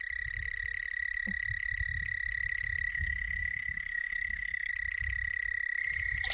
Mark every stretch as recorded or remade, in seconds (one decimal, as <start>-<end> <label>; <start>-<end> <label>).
0.0-2.9 recorded; 2.9-4.7 remade; 4.7-6.3 recorded